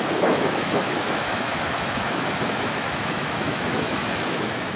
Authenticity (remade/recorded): remade